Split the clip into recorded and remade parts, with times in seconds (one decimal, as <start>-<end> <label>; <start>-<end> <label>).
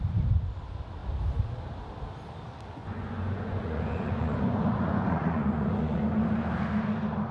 0.0-2.8 recorded; 2.8-6.0 remade; 6.0-7.3 recorded